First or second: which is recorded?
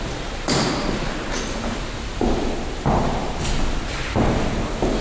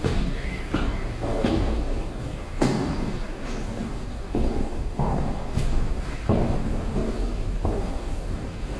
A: first